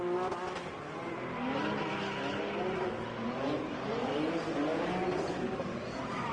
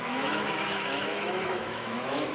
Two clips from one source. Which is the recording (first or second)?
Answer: first